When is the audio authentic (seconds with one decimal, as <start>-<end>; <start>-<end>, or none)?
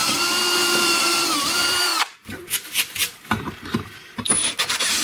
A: none